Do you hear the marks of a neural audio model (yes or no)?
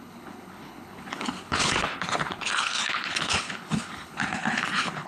yes